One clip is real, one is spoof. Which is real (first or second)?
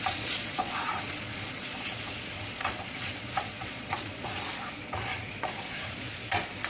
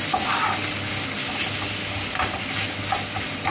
second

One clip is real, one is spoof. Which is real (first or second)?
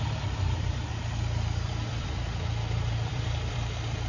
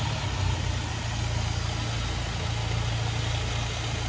second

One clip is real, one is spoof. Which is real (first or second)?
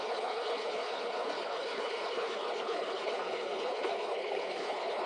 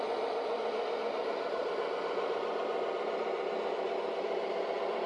second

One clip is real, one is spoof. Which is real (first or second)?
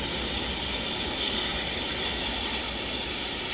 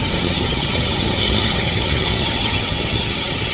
first